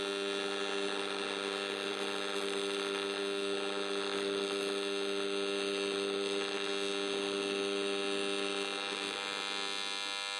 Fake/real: real